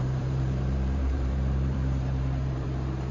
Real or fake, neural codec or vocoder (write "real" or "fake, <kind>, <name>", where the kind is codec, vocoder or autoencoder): fake, vocoder, BigVGAN v2